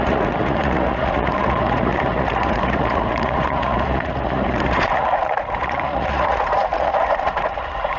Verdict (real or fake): fake